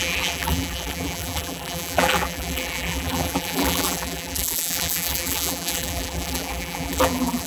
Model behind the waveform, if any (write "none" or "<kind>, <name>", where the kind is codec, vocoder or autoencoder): vocoder, BigVGAN v2